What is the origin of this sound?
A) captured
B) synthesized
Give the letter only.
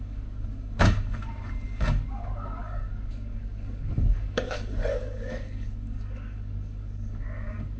B